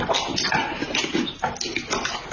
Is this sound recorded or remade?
recorded